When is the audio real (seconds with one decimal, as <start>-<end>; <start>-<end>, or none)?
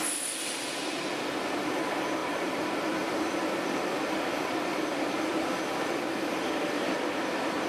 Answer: 0.0-7.7